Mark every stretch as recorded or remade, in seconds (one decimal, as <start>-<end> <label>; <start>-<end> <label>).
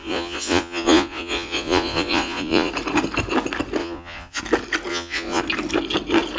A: 0.0-2.7 remade; 2.7-3.8 recorded; 3.8-4.4 remade; 4.4-4.9 recorded; 4.9-5.4 remade; 5.4-6.4 recorded